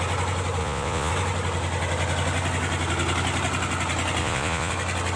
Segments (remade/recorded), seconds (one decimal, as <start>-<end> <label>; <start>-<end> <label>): 0.0-0.6 recorded; 0.6-1.1 remade; 1.1-4.2 recorded; 4.2-4.7 remade; 4.7-5.2 recorded